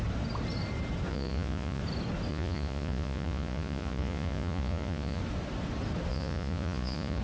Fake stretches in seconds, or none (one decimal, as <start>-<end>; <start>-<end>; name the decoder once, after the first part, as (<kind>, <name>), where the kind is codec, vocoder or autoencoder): 1.1-1.8 (vocoder, Vocos); 2.3-5.2; 6.1-7.2